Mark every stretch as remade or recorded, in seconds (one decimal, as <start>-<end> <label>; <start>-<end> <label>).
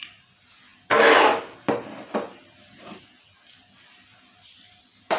0.0-5.2 recorded